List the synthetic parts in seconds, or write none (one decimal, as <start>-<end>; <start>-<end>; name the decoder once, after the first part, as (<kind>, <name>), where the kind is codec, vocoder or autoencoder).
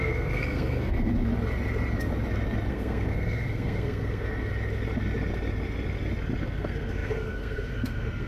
0.0-1.1 (codec, SNAC); 2.7-4.5; 6.4-8.3